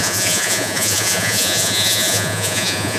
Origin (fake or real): fake